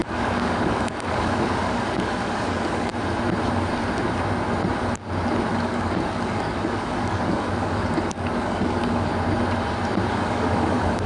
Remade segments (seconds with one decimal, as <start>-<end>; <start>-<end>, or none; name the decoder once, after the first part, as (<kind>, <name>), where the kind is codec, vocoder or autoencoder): 0.0-2.9 (codec, DAC); 5.5-9.1; 10.1-11.1